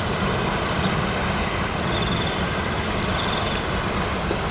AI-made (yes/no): no